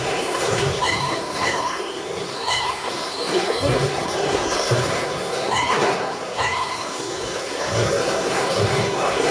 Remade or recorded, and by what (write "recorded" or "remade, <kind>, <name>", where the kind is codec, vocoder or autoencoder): remade, codec, SNAC